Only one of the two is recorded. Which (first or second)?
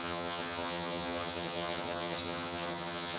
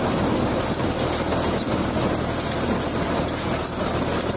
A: second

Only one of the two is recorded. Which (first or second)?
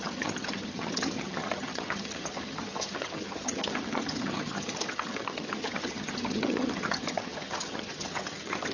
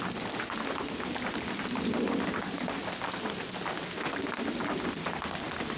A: second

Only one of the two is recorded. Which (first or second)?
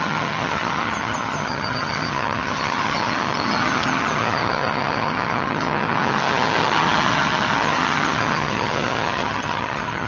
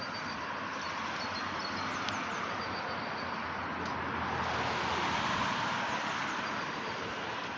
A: second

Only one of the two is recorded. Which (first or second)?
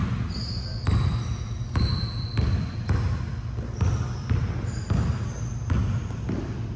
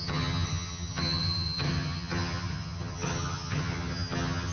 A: first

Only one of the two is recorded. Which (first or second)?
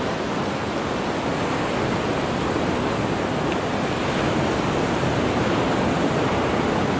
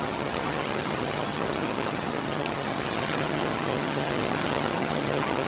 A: first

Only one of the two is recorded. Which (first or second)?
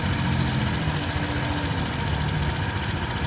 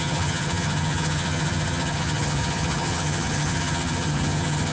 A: first